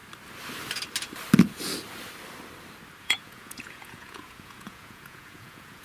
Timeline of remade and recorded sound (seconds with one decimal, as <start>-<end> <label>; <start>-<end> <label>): 0.0-3.0 recorded; 3.0-5.8 remade